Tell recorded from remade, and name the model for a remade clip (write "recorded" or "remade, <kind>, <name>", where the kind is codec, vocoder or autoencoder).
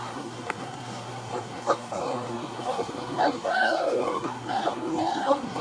remade, codec, SNAC